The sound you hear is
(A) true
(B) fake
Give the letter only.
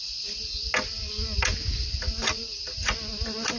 A